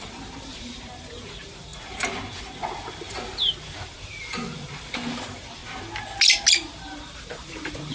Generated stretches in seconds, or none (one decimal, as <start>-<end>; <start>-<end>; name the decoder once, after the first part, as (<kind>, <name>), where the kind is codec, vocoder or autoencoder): 0.0-1.7 (vocoder, BigVGAN v2); 3.8-5.6; 6.5-7.9